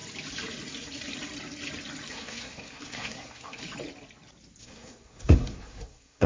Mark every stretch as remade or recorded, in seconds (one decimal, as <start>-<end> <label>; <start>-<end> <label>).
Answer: 0.0-2.1 recorded; 2.1-3.6 remade; 3.6-4.6 recorded; 4.6-6.3 remade